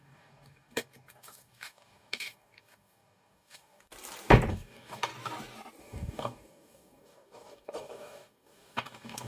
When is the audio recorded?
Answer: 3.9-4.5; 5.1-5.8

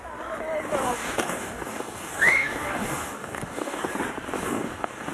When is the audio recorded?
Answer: 0.0-0.8; 3.9-4.4

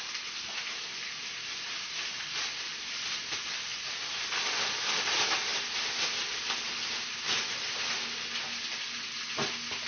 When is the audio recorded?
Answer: 0.0-9.9